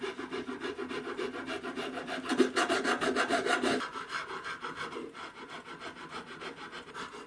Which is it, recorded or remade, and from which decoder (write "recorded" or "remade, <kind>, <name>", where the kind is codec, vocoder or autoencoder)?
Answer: recorded